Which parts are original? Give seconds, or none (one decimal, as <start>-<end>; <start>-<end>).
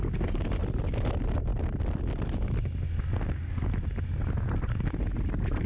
0.0-5.7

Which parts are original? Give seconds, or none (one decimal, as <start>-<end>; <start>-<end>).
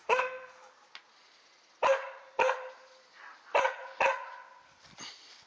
0.7-5.5